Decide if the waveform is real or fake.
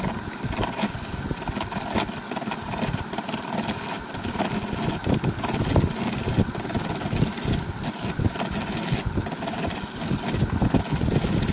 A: real